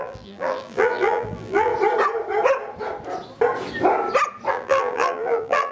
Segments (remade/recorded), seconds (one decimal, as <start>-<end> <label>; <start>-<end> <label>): 0.0-1.7 remade; 1.7-4.5 recorded; 4.5-5.7 remade